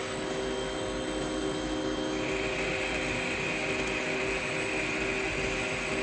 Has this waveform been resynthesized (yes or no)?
no